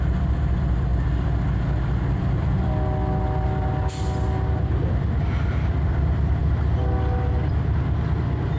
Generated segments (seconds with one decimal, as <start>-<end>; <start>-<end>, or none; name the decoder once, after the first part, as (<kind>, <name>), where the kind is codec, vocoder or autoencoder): none